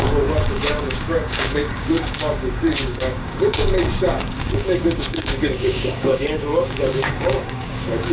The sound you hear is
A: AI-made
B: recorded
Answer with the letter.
A